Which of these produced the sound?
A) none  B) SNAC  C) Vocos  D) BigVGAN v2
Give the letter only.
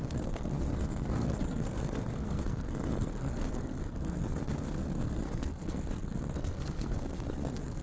B